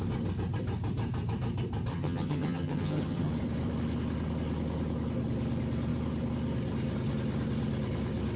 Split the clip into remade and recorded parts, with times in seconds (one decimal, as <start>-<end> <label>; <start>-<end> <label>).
0.0-1.9 recorded; 1.9-3.3 remade; 3.3-8.4 recorded